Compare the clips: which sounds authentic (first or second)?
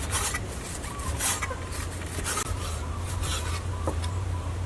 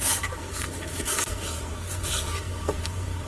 first